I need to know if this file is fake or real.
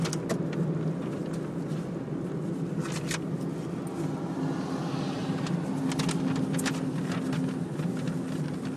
real